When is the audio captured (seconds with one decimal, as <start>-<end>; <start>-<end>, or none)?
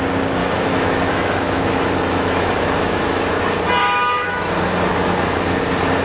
0.0-0.4; 3.4-3.8; 4.5-4.9; 5.6-6.0